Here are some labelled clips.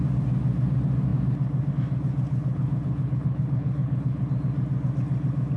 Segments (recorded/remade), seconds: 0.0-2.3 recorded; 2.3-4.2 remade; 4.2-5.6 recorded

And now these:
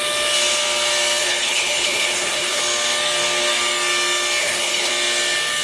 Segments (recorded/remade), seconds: 0.0-1.2 recorded; 1.2-2.6 remade; 2.6-4.4 recorded; 4.4-4.9 remade; 4.9-5.6 recorded

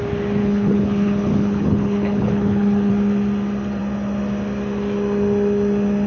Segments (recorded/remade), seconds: 0.0-0.4 recorded; 0.4-2.9 remade; 2.9-6.1 recorded

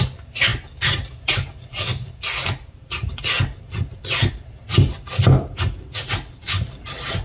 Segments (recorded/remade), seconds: 0.0-7.2 recorded

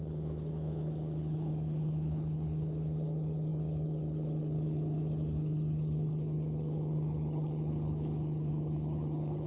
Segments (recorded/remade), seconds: 0.0-9.5 remade

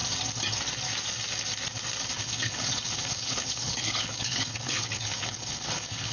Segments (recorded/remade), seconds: 0.0-2.1 recorded; 2.1-6.1 remade

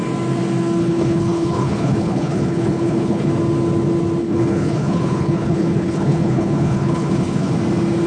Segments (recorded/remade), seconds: 0.0-0.8 recorded; 0.8-3.3 remade; 3.3-4.2 recorded; 4.2-7.5 remade; 7.5-8.1 recorded